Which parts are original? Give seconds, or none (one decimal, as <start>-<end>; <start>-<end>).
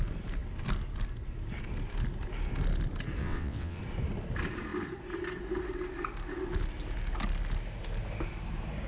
0.0-3.2; 3.8-8.9